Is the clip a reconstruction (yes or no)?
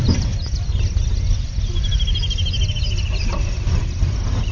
no